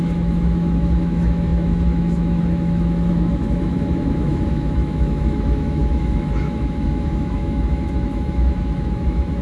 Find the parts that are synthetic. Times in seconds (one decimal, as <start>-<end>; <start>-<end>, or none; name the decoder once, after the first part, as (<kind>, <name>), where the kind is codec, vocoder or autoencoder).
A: 0.0-9.4 (autoencoder, DAC-VAE)